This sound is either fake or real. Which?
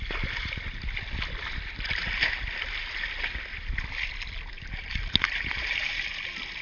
real